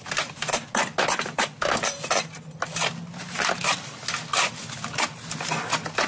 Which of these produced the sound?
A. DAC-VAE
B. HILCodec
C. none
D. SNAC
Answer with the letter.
C